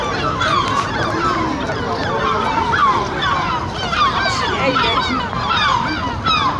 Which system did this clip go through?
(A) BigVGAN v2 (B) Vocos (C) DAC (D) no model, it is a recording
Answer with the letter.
D